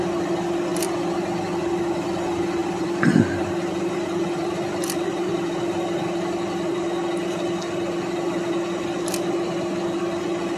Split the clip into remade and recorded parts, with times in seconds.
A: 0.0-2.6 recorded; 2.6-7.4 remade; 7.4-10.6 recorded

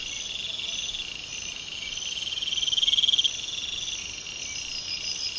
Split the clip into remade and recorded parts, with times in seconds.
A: 0.0-5.4 recorded